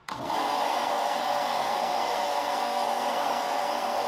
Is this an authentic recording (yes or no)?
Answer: no